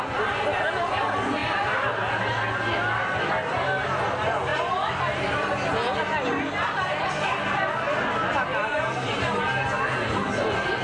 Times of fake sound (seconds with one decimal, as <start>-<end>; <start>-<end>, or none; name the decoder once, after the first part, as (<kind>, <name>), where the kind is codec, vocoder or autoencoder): none